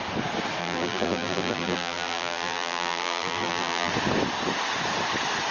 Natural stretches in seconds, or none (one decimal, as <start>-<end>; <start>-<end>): 0.0-0.6; 3.9-5.5